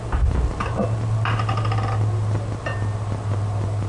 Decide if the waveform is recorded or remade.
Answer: recorded